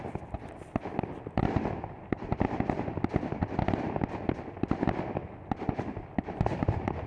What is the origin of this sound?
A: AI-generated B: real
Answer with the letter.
B